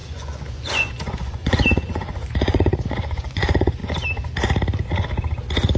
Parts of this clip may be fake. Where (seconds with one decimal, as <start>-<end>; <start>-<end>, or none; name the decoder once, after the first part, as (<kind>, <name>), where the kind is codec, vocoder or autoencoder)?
0.0-3.8 (vocoder, Vocos)